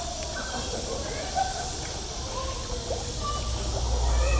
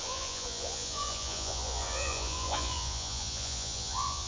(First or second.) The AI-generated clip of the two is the second